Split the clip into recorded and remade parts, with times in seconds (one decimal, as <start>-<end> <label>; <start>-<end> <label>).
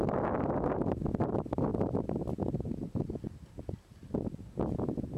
0.0-5.2 recorded